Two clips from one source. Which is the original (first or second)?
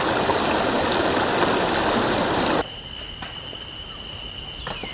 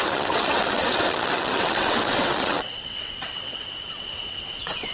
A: first